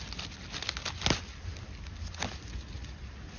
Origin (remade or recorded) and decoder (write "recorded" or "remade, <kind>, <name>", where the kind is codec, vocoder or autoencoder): recorded